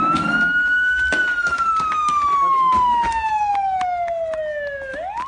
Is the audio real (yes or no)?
yes